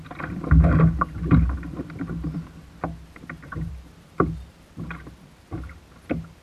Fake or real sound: real